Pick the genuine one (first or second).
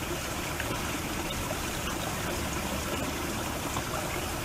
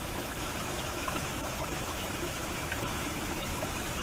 first